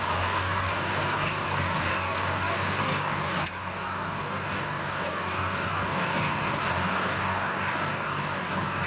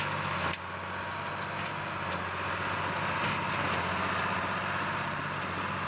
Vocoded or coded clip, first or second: first